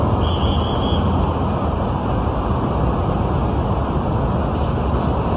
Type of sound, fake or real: real